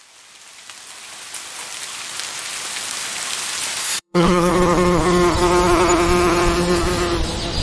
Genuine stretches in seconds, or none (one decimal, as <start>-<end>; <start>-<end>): 0.0-3.8; 4.5-7.6